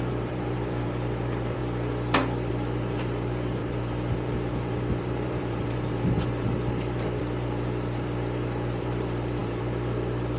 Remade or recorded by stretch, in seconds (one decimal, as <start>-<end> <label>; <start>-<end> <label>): 0.0-1.6 remade; 1.6-2.5 recorded; 2.5-10.4 remade